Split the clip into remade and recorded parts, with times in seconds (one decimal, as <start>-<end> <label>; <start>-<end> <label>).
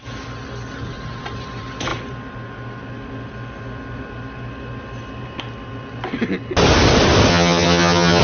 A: 0.0-7.3 recorded; 7.3-8.2 remade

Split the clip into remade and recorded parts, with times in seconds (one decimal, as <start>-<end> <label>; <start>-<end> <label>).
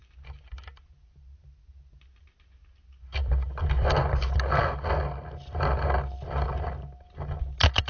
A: 0.0-7.9 recorded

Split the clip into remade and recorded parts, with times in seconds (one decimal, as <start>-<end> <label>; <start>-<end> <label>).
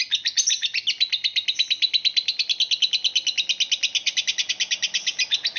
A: 0.0-5.6 recorded